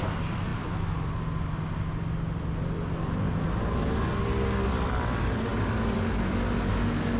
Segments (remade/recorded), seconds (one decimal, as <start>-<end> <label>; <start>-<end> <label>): 0.0-7.2 recorded

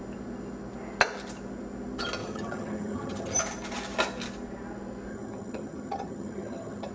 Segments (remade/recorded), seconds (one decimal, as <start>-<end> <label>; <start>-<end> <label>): 0.0-2.2 recorded; 2.2-3.4 remade; 3.4-5.1 recorded; 5.1-6.9 remade

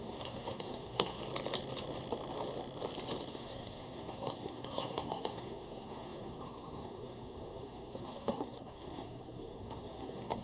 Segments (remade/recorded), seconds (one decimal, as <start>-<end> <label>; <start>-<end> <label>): 0.0-1.2 remade; 1.2-3.3 recorded; 3.3-10.4 remade

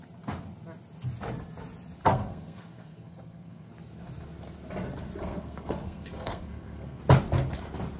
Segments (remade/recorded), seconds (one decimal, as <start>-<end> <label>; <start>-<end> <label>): 0.0-2.0 recorded; 2.0-3.7 remade; 3.7-5.2 recorded; 5.2-7.0 remade; 7.0-8.0 recorded

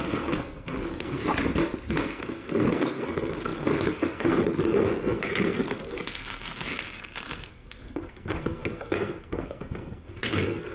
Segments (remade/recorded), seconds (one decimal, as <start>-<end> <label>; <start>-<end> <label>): 0.0-1.2 remade; 1.2-1.9 recorded; 1.9-10.7 remade

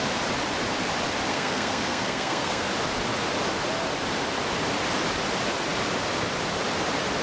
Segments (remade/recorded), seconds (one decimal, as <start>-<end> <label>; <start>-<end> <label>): 0.0-1.3 recorded; 1.3-2.7 remade; 2.7-7.2 recorded

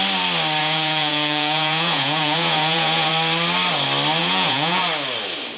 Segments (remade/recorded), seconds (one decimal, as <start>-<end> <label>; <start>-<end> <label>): 0.0-0.6 recorded; 0.6-3.1 remade; 3.1-4.2 recorded; 4.2-4.8 remade; 4.8-5.6 recorded